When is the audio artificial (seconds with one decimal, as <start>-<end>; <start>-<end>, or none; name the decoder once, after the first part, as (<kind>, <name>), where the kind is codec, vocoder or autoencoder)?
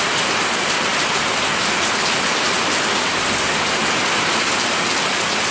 none